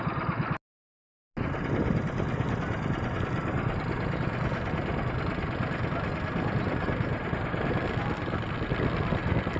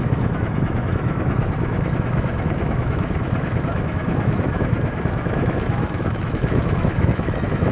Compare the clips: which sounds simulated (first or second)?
second